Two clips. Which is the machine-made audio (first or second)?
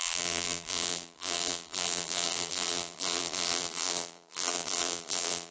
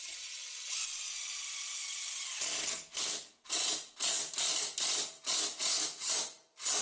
first